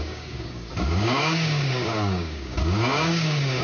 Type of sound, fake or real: fake